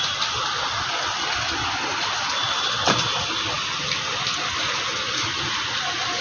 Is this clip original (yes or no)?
yes